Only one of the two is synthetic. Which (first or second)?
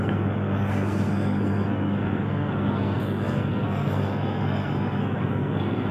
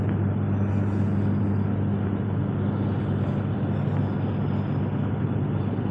first